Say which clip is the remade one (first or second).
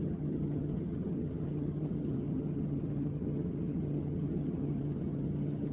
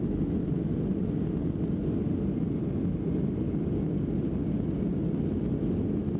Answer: first